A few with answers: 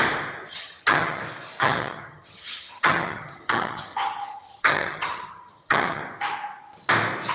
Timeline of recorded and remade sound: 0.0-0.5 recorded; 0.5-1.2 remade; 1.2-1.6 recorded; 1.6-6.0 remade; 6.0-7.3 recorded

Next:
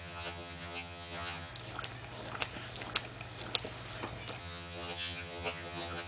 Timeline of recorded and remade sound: 0.0-1.5 remade; 1.5-4.4 recorded; 4.4-6.1 remade

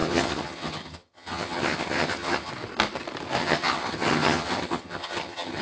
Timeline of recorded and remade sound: 0.0-2.5 remade; 2.5-3.4 recorded; 3.4-5.6 remade

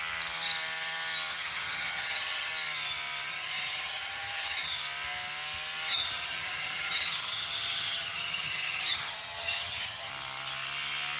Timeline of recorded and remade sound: 0.0-1.3 recorded; 1.3-2.5 remade; 2.5-3.3 recorded; 3.3-4.8 remade; 4.8-5.9 recorded; 5.9-10.1 remade; 10.1-11.2 recorded

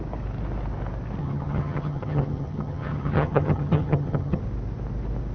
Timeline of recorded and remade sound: 0.0-1.2 recorded; 1.2-4.4 remade; 4.4-5.3 recorded

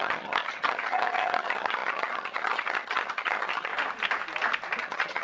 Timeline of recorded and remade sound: 0.0-3.7 remade; 3.7-4.8 recorded; 4.8-5.2 remade